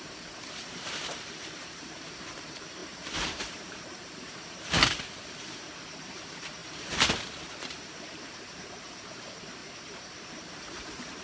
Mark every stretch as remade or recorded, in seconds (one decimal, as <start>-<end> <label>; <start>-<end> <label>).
0.0-9.6 remade; 9.6-10.3 recorded; 10.3-11.2 remade